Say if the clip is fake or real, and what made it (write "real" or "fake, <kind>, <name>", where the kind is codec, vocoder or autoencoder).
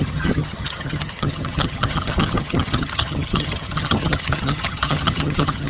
fake, vocoder, HiFi-GAN